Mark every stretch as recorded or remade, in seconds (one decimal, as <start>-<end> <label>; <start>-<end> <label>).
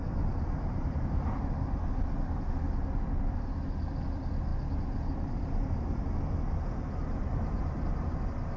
0.0-8.6 recorded